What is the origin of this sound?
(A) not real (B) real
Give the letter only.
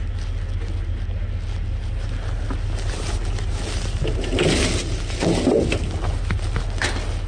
B